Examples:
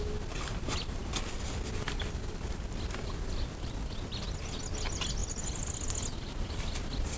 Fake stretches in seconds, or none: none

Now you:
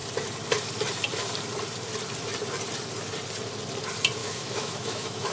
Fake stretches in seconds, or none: 4.2-5.3 (autoencoder, DAC-VAE)